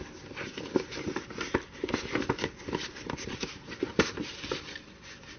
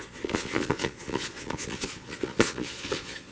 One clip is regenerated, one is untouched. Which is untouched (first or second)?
first